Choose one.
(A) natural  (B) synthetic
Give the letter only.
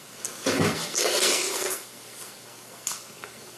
B